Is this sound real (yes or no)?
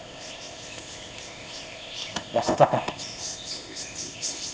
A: no